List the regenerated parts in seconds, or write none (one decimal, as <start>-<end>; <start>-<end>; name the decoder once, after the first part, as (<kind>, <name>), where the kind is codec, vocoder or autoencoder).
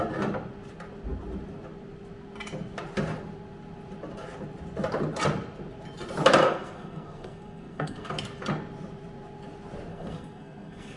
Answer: 6.4-8.1 (codec, SNAC); 9.9-11.0